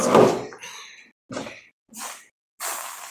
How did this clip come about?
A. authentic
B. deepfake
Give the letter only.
A